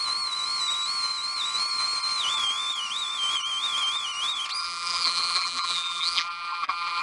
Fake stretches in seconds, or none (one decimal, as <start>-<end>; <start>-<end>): 4.6-7.0